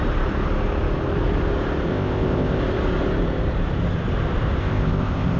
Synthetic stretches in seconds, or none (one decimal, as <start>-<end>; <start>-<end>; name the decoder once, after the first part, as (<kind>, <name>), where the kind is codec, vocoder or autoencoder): 1.9-2.6 (codec, ZipCodec); 4.6-5.4